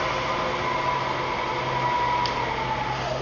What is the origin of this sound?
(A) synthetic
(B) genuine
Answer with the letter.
B